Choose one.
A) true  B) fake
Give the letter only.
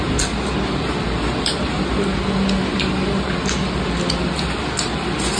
A